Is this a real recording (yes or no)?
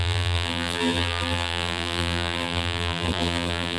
no